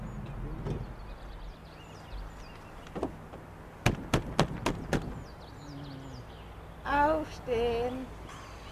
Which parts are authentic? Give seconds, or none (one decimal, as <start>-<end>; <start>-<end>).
0.0-8.7